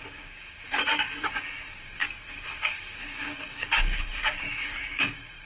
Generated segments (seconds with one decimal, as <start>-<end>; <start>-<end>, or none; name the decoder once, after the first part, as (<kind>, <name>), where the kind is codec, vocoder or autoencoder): 0.0-5.5 (codec, DAC)